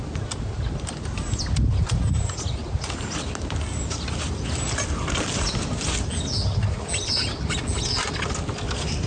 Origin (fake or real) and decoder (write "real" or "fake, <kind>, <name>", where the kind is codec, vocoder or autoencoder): real